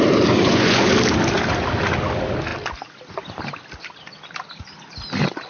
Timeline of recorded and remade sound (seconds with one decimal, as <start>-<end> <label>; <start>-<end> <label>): 0.0-0.4 recorded; 0.4-0.9 remade; 0.9-5.5 recorded

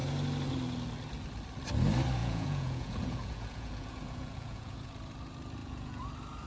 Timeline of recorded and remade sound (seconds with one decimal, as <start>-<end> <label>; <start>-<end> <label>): 0.0-2.2 recorded; 2.2-4.9 remade; 4.9-5.6 recorded; 5.6-6.1 remade; 6.1-6.5 recorded

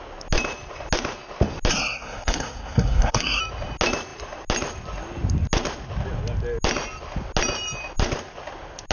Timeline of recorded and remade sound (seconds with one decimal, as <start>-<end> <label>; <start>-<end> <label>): 0.0-1.7 recorded; 1.7-3.4 remade; 3.4-8.9 recorded

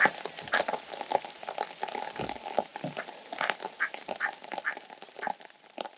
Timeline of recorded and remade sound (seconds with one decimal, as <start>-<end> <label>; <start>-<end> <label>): 0.0-6.0 recorded

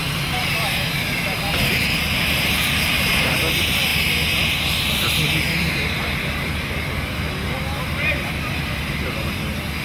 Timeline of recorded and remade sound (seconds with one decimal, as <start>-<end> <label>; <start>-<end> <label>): 0.0-0.4 recorded; 0.4-3.1 remade; 3.1-9.8 recorded